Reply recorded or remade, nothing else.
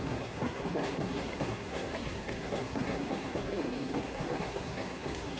remade